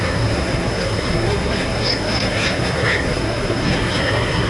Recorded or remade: remade